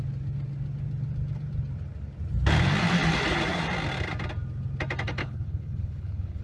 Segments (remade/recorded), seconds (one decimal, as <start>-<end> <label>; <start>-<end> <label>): 0.0-5.2 recorded; 5.2-6.4 remade